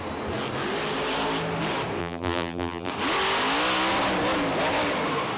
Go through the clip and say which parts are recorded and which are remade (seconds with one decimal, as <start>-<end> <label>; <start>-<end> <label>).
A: 0.0-2.0 recorded; 2.0-2.9 remade; 2.9-5.4 recorded